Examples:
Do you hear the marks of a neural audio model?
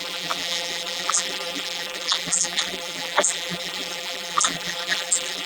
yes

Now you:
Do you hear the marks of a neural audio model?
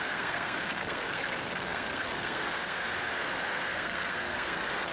yes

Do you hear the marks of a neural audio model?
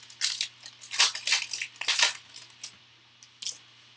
no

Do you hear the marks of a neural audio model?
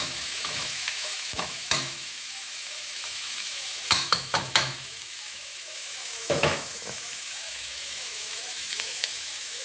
yes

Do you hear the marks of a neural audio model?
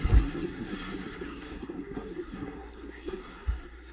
yes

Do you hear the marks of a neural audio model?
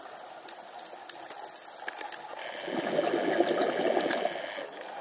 no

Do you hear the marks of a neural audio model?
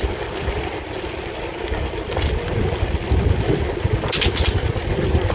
no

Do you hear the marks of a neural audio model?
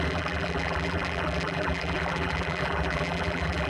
yes